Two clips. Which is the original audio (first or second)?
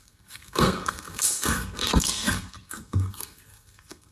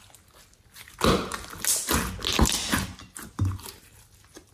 second